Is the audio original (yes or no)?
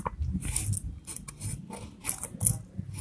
yes